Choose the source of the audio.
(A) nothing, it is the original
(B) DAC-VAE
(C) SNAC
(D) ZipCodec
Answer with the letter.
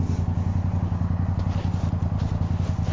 A